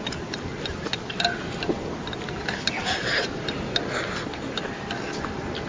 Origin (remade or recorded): recorded